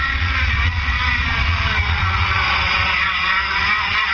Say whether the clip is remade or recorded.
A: remade